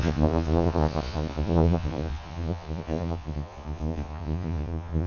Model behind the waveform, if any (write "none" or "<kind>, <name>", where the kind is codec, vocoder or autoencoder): vocoder, Vocos